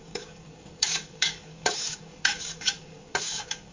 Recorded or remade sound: remade